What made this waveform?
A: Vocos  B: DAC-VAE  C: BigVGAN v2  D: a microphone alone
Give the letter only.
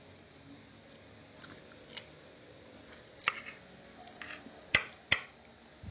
D